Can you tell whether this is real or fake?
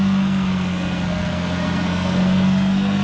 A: fake